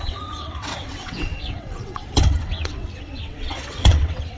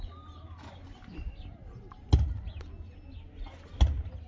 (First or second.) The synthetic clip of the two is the first